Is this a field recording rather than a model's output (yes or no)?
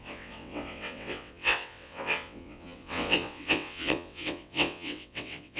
no